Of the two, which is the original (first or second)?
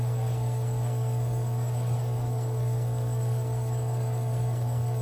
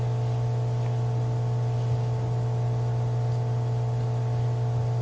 second